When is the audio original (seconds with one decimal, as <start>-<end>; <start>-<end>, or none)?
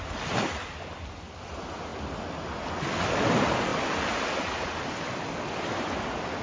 0.0-6.4